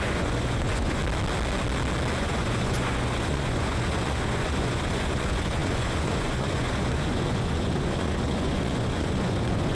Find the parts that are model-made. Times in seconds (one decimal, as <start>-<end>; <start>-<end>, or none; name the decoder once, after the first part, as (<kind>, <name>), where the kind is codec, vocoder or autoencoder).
0.0-1.0 (vocoder, Vocos); 2.2-9.7